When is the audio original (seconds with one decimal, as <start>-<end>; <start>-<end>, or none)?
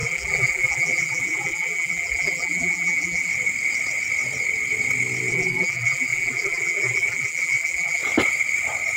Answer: 3.3-5.3; 8.0-9.0